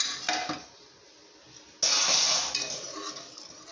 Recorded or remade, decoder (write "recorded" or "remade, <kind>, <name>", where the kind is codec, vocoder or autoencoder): recorded